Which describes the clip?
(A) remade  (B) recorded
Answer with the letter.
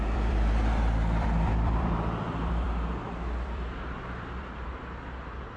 A